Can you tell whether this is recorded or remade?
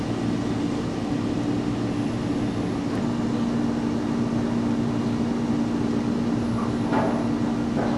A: recorded